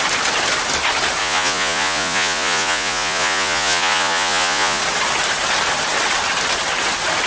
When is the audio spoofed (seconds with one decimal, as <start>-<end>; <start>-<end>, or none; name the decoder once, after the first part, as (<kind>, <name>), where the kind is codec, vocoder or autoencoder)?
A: 1.2-4.8 (vocoder, Vocos)